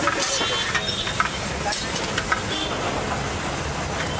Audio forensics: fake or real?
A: real